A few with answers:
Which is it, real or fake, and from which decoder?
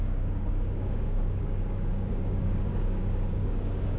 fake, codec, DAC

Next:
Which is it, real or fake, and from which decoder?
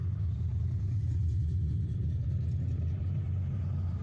fake, vocoder, BigVGAN v2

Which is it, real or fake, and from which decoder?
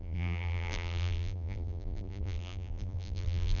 fake, vocoder, BigVGAN v2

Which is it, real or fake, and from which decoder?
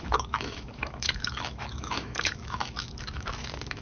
fake, autoencoder, DAC-VAE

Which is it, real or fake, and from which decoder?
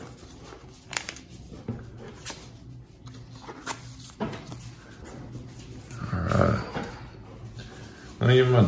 real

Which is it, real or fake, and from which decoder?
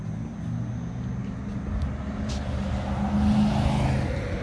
real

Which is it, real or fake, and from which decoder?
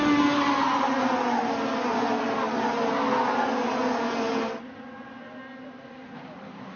real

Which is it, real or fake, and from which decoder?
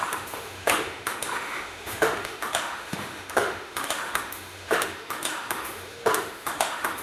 fake, autoencoder, DAC-VAE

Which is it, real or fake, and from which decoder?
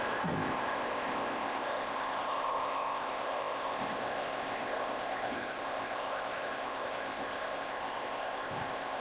fake, codec, ZipCodec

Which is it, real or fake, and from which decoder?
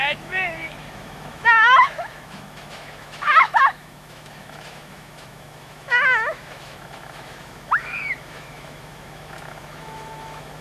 fake, autoencoder, DAC-VAE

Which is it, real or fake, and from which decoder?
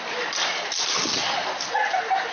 real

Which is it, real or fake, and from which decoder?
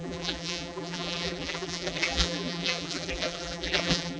fake, vocoder, BigVGAN v2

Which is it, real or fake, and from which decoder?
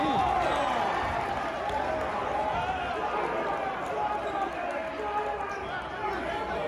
real